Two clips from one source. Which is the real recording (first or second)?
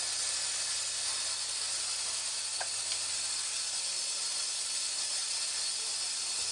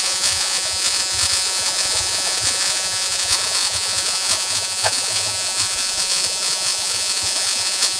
first